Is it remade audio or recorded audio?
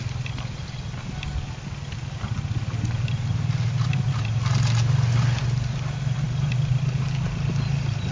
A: recorded